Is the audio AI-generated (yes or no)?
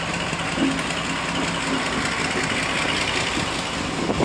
no